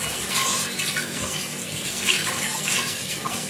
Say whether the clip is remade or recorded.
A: remade